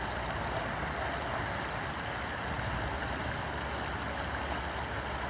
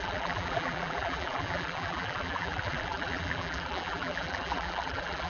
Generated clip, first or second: second